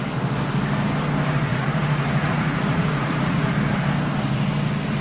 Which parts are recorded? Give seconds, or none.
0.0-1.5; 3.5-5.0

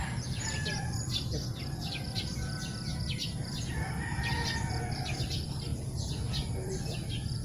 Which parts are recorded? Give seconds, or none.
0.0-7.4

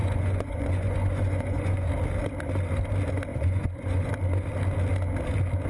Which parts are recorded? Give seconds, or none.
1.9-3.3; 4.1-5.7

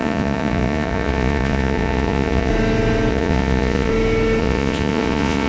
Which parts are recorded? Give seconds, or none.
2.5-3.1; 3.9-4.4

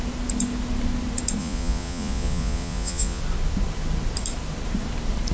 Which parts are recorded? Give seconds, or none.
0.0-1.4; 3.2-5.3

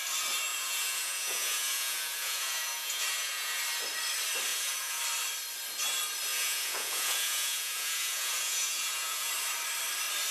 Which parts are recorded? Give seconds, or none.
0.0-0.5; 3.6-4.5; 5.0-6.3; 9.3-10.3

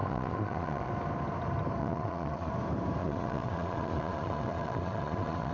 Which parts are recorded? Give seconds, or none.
0.9-1.8; 2.5-3.0